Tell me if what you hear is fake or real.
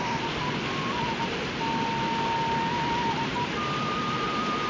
real